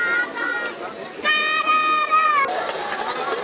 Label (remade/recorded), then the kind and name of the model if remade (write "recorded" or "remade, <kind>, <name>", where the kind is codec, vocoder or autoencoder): recorded